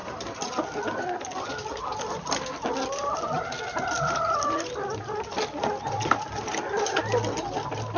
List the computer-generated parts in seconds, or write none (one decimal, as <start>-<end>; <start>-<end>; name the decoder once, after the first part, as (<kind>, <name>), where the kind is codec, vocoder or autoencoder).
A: none